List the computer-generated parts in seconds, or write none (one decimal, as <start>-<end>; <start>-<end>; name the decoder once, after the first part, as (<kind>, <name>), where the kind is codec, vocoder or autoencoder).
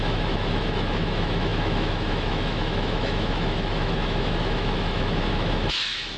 0.0-6.2 (autoencoder, DAC-VAE)